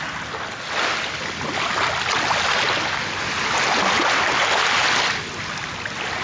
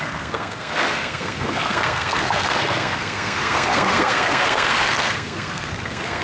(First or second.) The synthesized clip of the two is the second